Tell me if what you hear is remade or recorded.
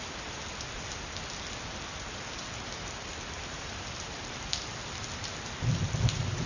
recorded